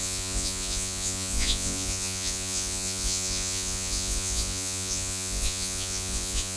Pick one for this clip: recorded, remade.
remade